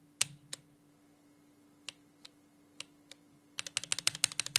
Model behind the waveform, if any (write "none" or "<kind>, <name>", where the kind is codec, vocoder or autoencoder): none